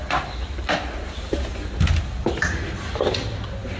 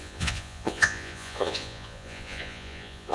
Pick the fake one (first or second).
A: second